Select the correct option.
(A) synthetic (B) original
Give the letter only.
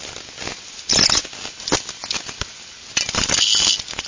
B